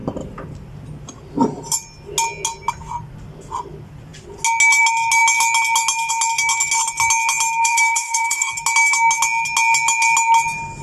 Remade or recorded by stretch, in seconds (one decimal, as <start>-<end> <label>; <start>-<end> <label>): 0.0-7.6 recorded; 7.6-8.5 remade; 8.5-10.8 recorded